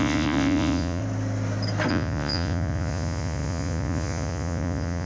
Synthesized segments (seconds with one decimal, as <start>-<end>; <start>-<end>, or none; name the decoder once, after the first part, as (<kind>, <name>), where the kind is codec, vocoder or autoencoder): 0.0-1.0 (vocoder, Vocos); 1.9-5.1